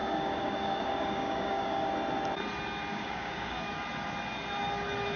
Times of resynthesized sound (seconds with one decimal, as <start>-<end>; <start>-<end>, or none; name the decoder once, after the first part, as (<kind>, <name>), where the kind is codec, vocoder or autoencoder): 0.0-1.9 (codec, DAC); 2.9-3.7